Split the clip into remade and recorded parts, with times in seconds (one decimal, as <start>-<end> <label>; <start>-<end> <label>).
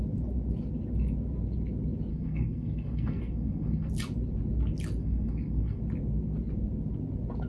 0.0-2.1 recorded; 2.1-3.9 remade; 3.9-5.0 recorded; 5.0-5.8 remade; 5.8-7.5 recorded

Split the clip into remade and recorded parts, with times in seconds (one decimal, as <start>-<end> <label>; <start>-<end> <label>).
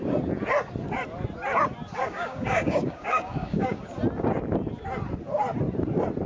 0.0-2.0 recorded; 2.0-3.8 remade; 3.8-6.3 recorded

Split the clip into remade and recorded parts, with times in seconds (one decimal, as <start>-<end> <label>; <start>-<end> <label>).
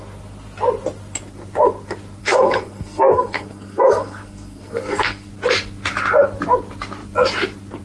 0.0-2.2 recorded; 2.2-5.3 remade; 5.3-7.8 recorded